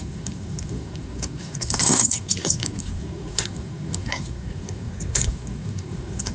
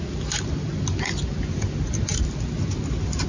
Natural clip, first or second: second